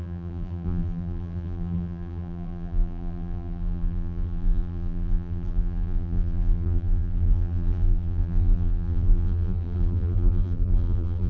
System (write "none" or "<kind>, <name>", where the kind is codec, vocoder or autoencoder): vocoder, BigVGAN v2